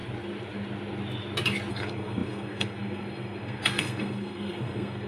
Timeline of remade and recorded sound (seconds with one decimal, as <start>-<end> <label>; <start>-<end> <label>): 0.0-1.7 recorded; 1.7-5.1 remade